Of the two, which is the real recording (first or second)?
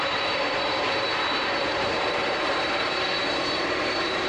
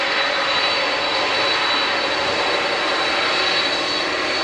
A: second